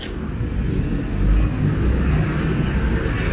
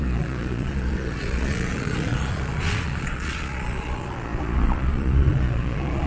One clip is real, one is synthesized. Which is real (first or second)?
first